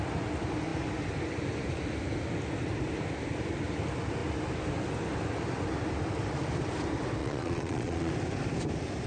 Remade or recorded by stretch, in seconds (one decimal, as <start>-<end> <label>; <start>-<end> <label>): 0.0-7.2 recorded; 7.2-8.1 remade; 8.1-9.1 recorded